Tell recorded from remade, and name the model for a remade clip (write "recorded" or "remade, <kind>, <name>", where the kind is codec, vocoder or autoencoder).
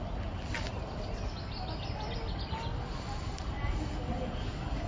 recorded